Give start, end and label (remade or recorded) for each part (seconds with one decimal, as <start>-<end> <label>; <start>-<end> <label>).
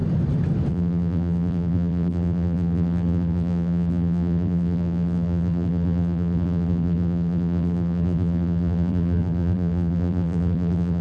0.0-0.7 recorded; 0.7-11.0 remade